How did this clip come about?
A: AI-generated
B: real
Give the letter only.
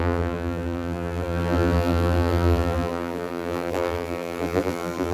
A